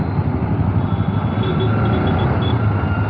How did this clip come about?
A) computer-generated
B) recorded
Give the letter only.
B